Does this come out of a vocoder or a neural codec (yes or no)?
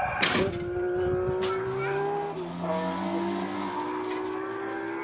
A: no